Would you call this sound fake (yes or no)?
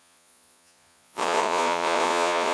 yes